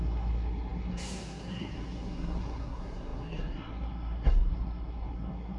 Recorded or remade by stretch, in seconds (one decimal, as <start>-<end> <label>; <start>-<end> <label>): 0.0-5.6 remade